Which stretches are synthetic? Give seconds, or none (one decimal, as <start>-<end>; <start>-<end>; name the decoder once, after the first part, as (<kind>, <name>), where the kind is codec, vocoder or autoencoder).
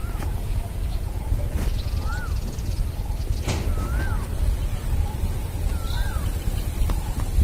0.0-1.4 (vocoder, Vocos)